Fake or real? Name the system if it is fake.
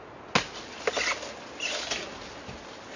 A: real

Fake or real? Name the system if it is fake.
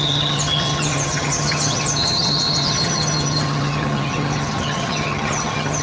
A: fake, vocoder, HiFi-GAN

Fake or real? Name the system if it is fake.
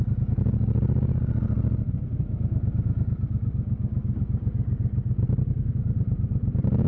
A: real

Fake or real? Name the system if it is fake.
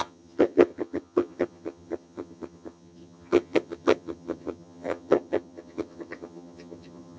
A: fake, vocoder, HiFi-GAN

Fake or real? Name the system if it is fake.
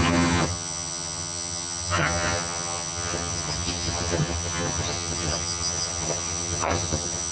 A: fake, vocoder, HiFi-GAN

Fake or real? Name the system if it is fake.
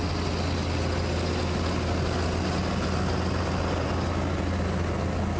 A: real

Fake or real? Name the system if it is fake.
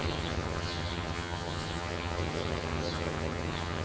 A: fake, vocoder, HiFi-GAN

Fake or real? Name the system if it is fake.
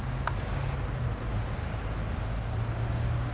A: real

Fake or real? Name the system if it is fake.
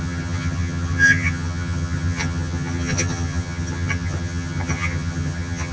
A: fake, vocoder, HiFi-GAN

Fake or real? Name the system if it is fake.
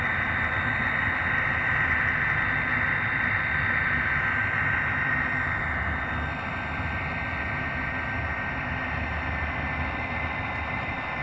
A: real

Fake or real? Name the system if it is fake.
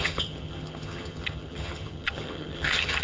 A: fake, vocoder, HiFi-GAN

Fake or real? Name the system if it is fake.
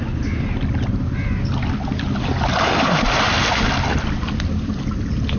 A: real